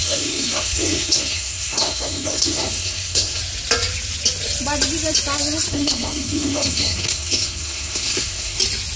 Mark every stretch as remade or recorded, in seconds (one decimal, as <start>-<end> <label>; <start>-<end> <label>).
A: 0.0-3.4 remade; 3.4-5.7 recorded; 5.7-8.6 remade; 8.6-9.0 recorded